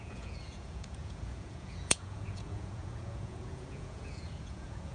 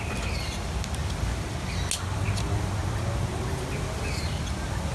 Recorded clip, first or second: second